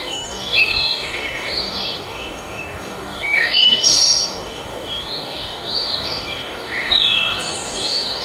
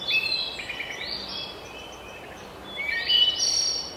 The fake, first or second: first